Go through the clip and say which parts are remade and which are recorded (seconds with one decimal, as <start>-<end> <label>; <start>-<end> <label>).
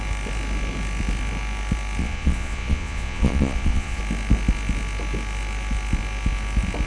0.0-2.0 recorded; 2.0-4.0 remade; 4.0-6.9 recorded